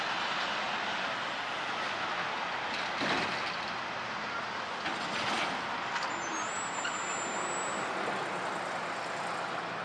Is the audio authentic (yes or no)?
yes